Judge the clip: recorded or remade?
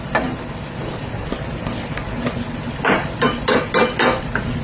recorded